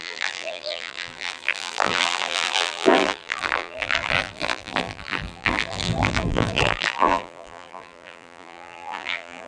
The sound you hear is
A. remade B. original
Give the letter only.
A